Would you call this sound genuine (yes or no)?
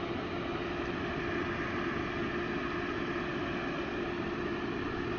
yes